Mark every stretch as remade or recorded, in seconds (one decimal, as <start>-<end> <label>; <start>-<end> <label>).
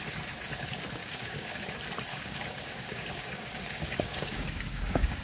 0.0-1.0 recorded; 1.0-1.6 remade; 1.6-2.1 recorded; 2.1-5.2 remade